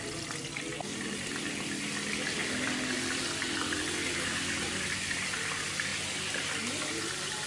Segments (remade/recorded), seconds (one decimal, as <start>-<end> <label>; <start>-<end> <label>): 0.0-2.4 recorded; 2.4-5.3 remade; 5.3-5.9 recorded; 5.9-6.5 remade; 6.5-7.5 recorded